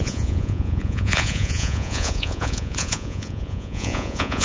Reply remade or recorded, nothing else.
remade